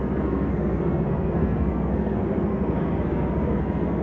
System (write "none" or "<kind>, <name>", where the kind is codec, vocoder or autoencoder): codec, SNAC